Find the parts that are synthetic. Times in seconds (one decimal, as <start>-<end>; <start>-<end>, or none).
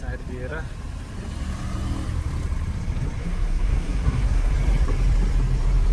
3.2-4.5